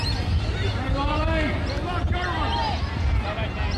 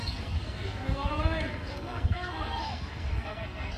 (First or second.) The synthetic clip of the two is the second